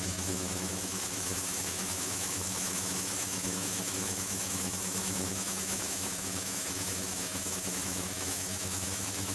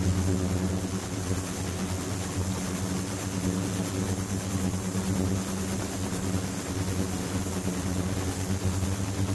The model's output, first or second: first